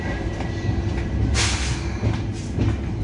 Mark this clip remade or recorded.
recorded